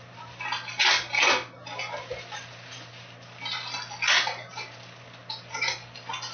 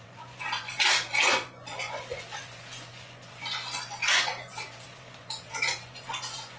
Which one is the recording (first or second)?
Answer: first